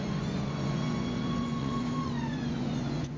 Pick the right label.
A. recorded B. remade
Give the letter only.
B